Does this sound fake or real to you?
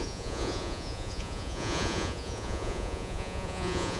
fake